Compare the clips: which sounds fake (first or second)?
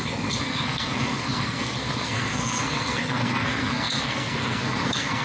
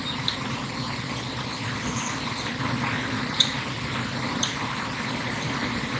first